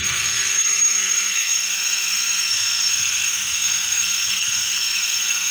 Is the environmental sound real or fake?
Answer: fake